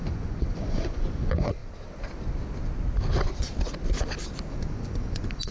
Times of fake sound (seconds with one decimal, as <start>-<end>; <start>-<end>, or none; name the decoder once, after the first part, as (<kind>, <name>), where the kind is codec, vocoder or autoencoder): 0.0-1.6 (vocoder, Vocos); 4.5-5.5